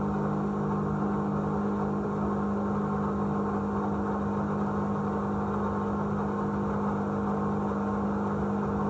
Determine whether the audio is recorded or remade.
recorded